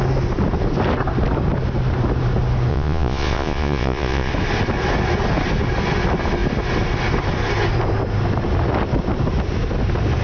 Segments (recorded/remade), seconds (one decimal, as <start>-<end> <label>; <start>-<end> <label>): 0.0-2.7 recorded; 2.7-4.3 remade; 4.3-10.2 recorded